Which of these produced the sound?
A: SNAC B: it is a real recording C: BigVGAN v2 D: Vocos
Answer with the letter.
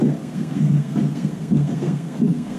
A